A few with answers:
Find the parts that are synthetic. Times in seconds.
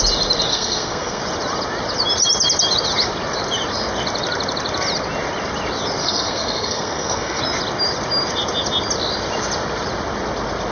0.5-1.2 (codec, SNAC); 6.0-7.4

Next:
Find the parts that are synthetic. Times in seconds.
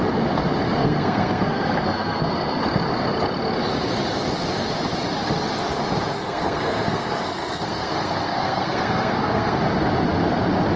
0.8-2.6 (codec, SNAC); 6.2-9.6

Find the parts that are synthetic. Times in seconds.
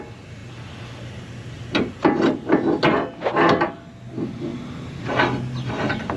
none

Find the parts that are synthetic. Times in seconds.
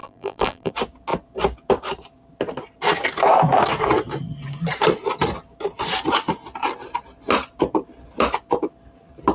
0.0-0.7 (vocoder, BigVGAN v2)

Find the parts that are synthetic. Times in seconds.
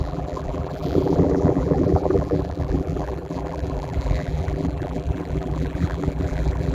0.0-6.7 (vocoder, BigVGAN v2)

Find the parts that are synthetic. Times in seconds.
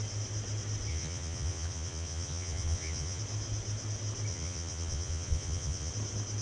0.9-3.2 (vocoder, Vocos); 4.3-5.9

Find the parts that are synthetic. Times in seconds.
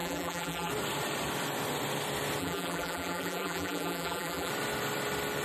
0.0-0.7 (vocoder, BigVGAN v2); 2.4-4.5